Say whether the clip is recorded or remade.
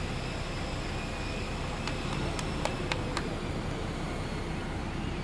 recorded